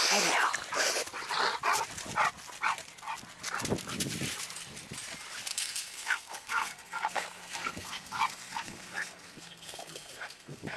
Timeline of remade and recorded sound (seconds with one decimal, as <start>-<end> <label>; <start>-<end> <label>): 0.0-5.5 recorded; 5.5-10.8 remade